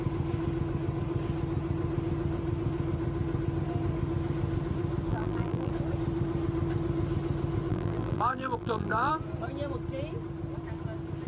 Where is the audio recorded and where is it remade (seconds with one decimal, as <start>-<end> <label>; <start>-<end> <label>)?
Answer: 0.0-5.1 recorded; 5.1-5.7 remade; 5.7-7.7 recorded; 7.7-9.1 remade; 9.1-11.3 recorded